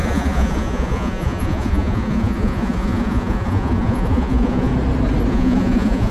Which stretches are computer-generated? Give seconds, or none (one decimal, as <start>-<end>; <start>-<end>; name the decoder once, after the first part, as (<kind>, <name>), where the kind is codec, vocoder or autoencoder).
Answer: 0.0-4.7 (vocoder, Vocos); 5.3-6.1